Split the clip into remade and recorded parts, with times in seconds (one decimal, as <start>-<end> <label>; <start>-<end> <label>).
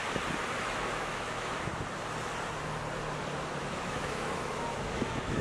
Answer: 0.0-0.8 recorded; 0.8-1.7 remade; 1.7-3.6 recorded; 3.6-5.4 remade